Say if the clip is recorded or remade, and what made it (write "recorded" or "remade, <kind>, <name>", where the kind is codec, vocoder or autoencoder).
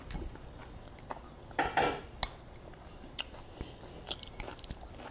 recorded